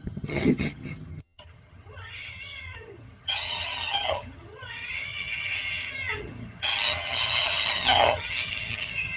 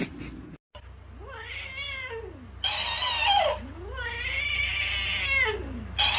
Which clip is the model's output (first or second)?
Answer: first